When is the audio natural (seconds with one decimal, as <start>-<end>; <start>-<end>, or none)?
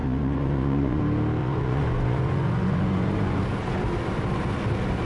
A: 1.0-1.4; 3.4-5.0